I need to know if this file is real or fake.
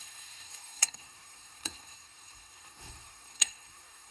fake